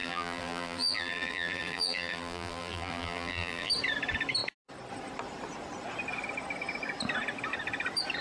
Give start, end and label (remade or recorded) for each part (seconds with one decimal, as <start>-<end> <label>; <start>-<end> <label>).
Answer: 0.0-3.7 remade; 3.7-8.2 recorded